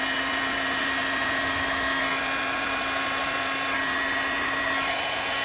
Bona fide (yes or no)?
yes